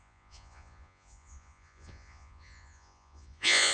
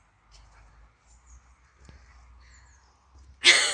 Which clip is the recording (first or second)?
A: second